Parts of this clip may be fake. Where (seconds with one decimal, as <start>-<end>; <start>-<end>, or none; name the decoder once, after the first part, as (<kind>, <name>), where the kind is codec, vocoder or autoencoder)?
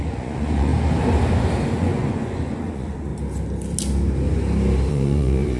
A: 0.0-0.7 (vocoder, Vocos); 1.7-3.1; 4.9-5.6